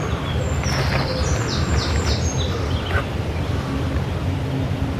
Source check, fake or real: real